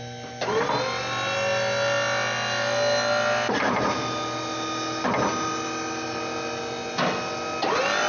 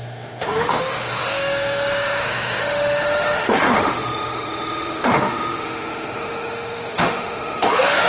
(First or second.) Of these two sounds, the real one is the first